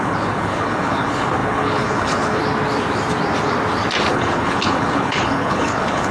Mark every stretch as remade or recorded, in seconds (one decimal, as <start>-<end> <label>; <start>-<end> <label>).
0.0-2.4 remade; 2.4-4.1 recorded; 4.1-6.1 remade